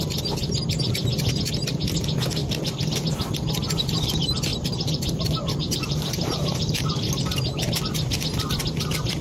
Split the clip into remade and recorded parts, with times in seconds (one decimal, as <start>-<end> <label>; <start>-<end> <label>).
0.0-2.4 recorded; 2.4-2.9 remade; 2.9-4.5 recorded; 4.5-7.8 remade; 7.8-9.2 recorded